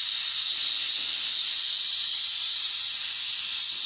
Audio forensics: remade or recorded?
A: recorded